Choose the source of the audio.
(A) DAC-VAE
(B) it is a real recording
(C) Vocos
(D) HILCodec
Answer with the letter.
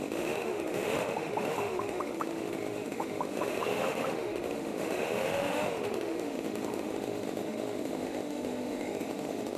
A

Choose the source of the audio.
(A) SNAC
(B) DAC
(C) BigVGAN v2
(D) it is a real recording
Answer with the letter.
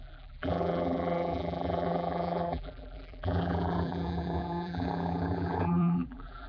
C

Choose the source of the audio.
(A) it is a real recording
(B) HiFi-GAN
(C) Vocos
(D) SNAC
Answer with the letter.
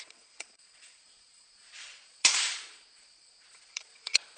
C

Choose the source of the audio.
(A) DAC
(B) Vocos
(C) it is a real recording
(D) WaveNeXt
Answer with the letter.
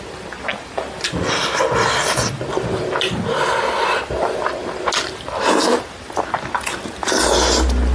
C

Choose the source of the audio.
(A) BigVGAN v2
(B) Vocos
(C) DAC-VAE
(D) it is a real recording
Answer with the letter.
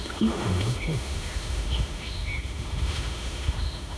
C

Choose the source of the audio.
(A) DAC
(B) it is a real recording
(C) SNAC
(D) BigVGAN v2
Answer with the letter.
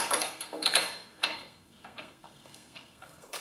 C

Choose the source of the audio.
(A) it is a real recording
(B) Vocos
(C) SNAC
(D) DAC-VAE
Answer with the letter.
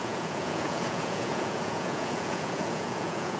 B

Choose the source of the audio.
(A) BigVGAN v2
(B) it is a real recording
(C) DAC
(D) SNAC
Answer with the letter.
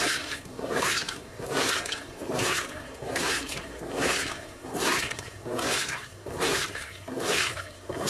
D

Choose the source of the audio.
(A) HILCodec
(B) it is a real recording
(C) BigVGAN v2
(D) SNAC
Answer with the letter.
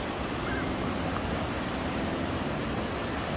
B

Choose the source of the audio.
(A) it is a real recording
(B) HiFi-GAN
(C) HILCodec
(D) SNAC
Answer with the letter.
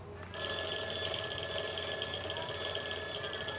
A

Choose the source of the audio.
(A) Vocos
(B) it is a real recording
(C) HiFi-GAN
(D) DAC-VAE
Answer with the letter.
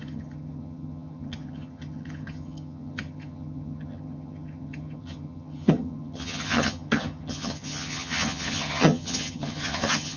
C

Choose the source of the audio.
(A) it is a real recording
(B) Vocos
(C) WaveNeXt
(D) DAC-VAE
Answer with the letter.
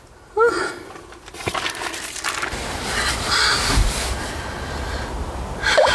A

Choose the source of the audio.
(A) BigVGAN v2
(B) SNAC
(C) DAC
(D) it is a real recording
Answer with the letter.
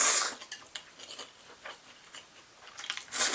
D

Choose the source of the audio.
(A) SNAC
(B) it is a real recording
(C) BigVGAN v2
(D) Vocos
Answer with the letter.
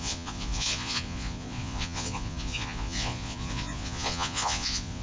D